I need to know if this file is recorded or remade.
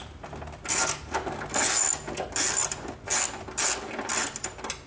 recorded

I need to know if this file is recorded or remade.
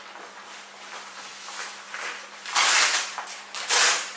recorded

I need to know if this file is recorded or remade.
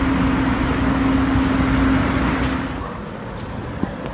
recorded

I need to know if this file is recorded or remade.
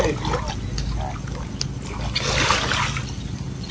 recorded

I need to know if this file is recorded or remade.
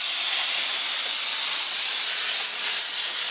remade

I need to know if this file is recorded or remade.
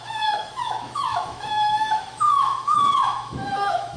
remade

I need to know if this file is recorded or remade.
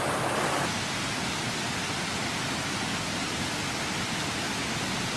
remade